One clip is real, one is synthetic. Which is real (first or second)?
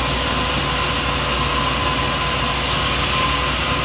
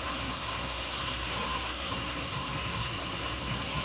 first